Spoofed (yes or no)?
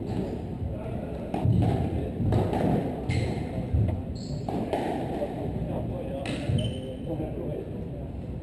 yes